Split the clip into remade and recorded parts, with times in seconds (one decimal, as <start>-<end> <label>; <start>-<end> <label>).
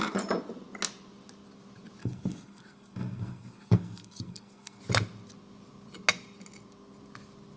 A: 0.0-2.0 recorded; 2.0-4.8 remade; 4.8-7.6 recorded